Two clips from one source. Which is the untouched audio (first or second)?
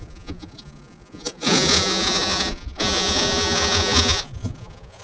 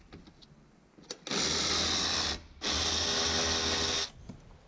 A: second